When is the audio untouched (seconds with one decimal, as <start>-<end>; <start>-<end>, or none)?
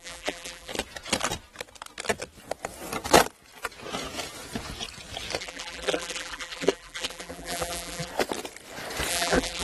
0.7-5.4; 8.1-9.1